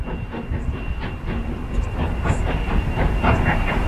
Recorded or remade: remade